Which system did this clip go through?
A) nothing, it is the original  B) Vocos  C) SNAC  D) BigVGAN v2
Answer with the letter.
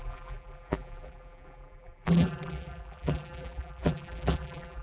D